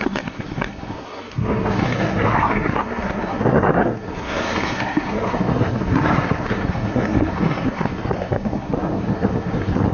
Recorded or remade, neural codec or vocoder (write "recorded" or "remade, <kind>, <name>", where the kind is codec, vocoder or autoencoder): remade, codec, SNAC